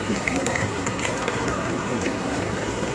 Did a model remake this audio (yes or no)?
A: yes